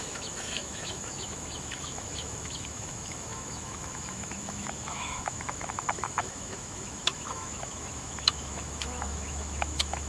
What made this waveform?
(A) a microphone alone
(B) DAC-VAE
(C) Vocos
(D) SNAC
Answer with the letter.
B